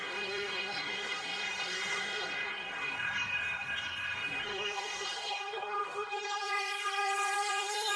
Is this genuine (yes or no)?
no